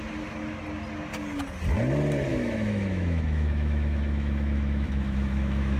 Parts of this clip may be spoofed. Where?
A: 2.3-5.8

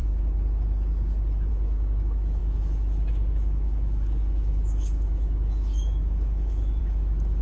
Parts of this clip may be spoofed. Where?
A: 1.5-7.4

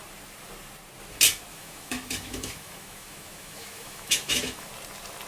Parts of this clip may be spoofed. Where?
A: 1.5-4.7

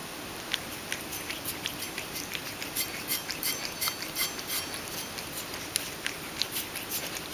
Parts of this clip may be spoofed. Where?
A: none

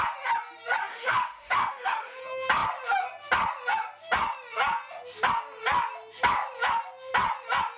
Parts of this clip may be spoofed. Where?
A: 0.9-2.2

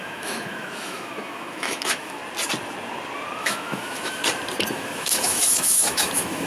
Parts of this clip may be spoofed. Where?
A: 0.0-2.2; 3.4-4.2; 4.7-6.5